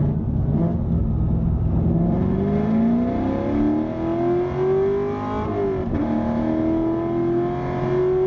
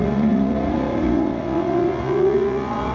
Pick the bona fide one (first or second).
first